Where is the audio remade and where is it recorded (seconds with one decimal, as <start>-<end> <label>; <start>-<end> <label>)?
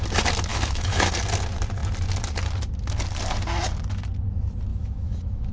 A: 0.0-0.5 recorded; 0.5-1.1 remade; 1.1-4.7 recorded; 4.7-5.5 remade